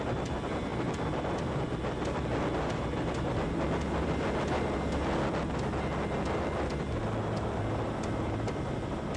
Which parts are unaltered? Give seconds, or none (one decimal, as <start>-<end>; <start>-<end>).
0.0-9.2